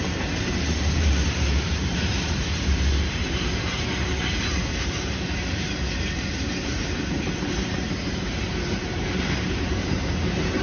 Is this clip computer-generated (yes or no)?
yes